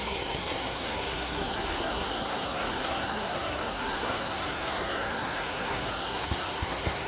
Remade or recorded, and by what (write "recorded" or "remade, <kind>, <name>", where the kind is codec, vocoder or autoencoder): remade, codec, SNAC